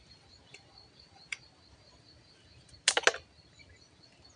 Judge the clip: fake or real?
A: real